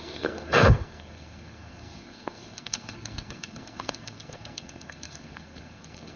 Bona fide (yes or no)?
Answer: no